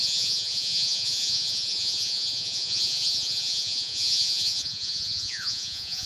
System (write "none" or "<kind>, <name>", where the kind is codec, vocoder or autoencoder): vocoder, Vocos